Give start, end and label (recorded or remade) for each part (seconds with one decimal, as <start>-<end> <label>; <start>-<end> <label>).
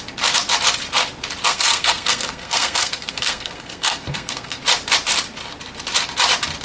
0.0-1.5 recorded; 1.5-4.6 remade; 4.6-6.6 recorded